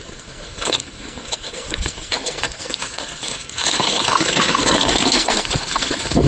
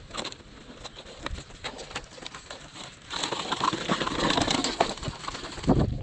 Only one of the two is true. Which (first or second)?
second